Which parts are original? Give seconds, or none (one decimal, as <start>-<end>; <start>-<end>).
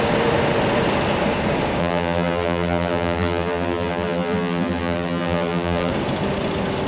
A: 0.0-1.8; 5.9-6.9